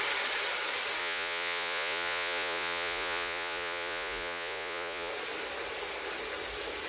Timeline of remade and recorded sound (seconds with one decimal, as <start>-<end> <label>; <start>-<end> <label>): 0.0-1.0 recorded; 1.0-5.1 remade; 5.1-6.9 recorded